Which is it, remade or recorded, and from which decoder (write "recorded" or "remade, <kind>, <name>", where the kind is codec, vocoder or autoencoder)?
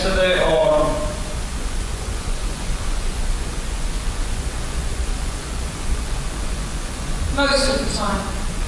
remade, vocoder, Vocos